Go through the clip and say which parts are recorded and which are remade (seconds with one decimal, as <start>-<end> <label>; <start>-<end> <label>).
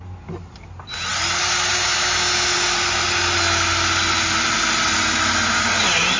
0.0-1.1 recorded; 1.1-1.7 remade; 1.7-6.2 recorded